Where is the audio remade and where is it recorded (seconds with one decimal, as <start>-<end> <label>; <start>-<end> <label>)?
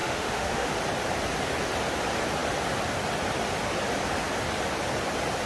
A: 0.0-0.7 remade; 0.7-5.5 recorded